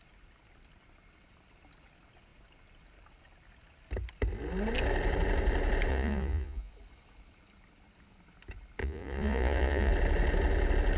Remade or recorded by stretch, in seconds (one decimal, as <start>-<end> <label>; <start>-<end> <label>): 0.0-5.9 recorded; 5.9-6.7 remade; 6.7-8.8 recorded; 8.8-9.9 remade; 9.9-11.0 recorded